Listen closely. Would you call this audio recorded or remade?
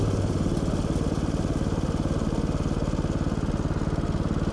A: recorded